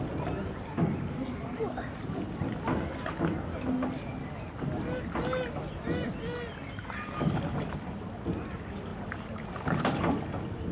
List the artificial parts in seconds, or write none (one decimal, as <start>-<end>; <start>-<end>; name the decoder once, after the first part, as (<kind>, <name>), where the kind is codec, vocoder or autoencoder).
none